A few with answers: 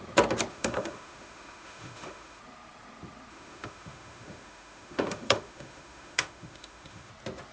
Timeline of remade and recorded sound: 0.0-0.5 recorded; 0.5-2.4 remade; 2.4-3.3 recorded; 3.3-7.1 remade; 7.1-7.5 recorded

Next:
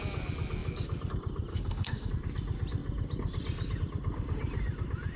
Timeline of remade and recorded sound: 0.0-1.5 recorded; 1.5-2.1 remade; 2.1-5.2 recorded

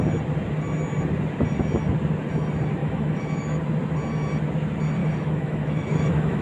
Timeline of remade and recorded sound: 0.0-2.8 recorded; 2.8-3.6 remade; 3.6-5.0 recorded; 5.0-6.4 remade

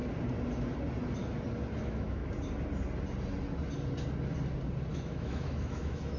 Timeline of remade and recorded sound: 0.0-1.8 recorded; 1.8-2.2 remade; 2.2-4.9 recorded; 4.9-6.2 remade